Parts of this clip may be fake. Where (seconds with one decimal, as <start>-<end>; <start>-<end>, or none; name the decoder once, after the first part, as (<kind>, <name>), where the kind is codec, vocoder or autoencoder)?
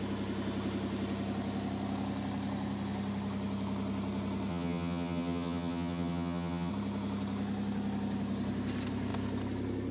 4.5-6.7 (vocoder, HiFi-GAN)